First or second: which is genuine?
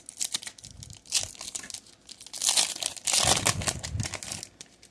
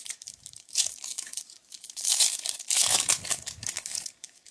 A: first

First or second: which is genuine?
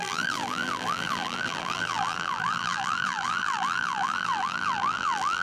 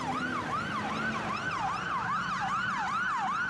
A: second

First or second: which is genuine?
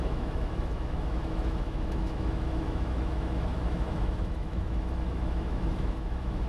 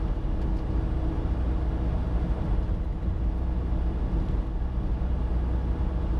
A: second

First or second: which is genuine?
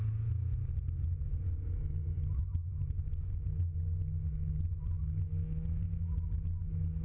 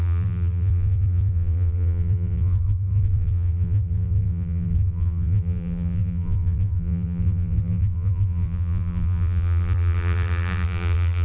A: first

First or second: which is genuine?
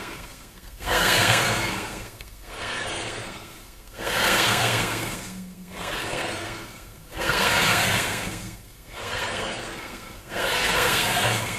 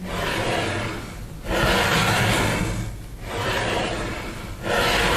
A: second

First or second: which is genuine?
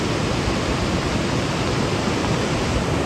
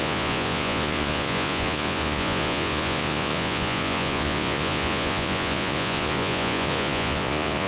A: first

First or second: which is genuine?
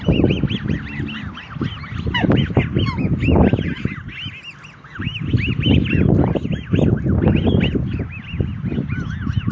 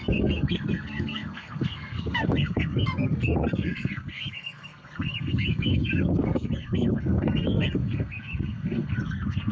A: first